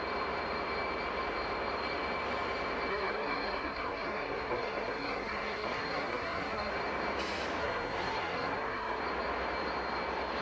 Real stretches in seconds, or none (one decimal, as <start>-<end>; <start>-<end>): 0.0-2.9; 6.7-7.6; 9.0-10.4